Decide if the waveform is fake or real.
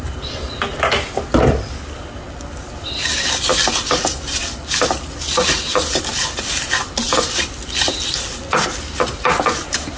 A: real